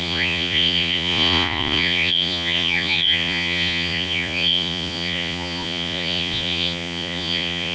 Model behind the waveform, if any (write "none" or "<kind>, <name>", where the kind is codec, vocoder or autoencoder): vocoder, Vocos